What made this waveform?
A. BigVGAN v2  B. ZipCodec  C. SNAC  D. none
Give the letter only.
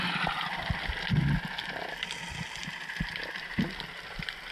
D